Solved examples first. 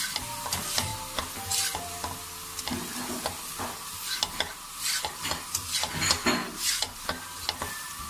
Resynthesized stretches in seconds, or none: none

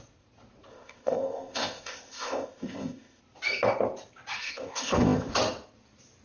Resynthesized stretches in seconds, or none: 0.7-3.2; 4.4-5.3

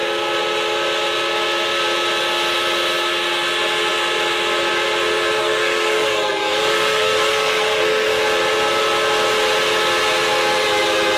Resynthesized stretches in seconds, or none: 5.4-8.2

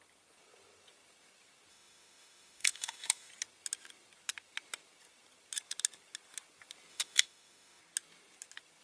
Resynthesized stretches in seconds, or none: 1.7-3.3; 6.9-7.8

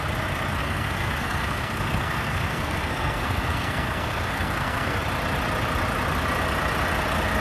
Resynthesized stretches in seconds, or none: 0.6-5.0